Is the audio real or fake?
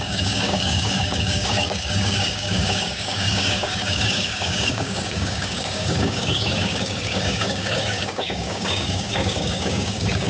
fake